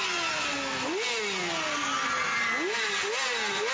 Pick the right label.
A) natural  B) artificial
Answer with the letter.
A